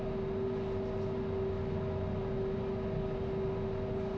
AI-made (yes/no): no